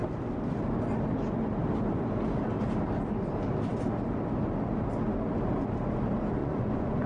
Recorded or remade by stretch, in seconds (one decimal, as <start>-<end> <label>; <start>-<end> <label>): 0.0-6.4 recorded; 6.4-7.1 remade